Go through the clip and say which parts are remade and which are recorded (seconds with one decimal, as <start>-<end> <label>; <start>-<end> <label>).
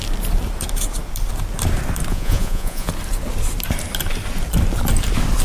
0.0-2.1 recorded; 2.1-2.9 remade; 2.9-5.4 recorded